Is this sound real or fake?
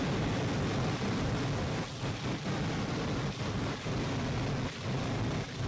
real